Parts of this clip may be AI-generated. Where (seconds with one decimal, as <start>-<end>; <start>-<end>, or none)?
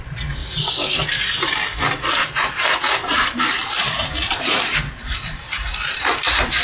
2.2-6.6